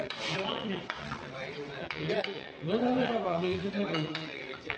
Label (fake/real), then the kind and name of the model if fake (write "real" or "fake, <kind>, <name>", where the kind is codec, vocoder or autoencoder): fake, vocoder, WaveNeXt